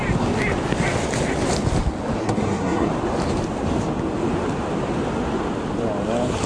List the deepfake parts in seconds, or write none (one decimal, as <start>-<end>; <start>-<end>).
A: 2.2-2.9